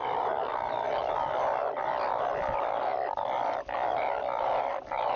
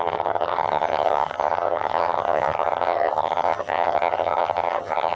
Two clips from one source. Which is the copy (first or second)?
second